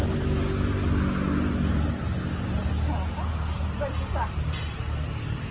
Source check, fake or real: real